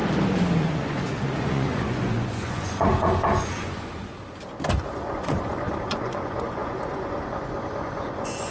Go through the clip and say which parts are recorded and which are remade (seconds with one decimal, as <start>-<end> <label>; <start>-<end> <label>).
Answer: 0.0-0.6 recorded; 0.6-4.1 remade; 4.1-4.9 recorded; 4.9-8.5 remade